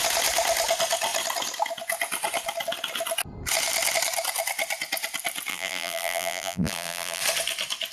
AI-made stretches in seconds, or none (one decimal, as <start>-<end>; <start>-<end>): 5.5-7.2